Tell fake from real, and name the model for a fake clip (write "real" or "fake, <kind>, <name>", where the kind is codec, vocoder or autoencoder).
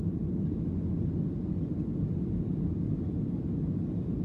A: real